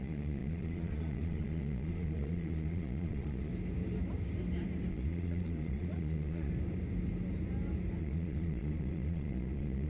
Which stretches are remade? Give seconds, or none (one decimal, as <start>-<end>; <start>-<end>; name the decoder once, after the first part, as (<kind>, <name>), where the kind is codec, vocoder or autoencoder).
0.0-3.5 (vocoder, Vocos); 4.9-6.5; 8.0-9.9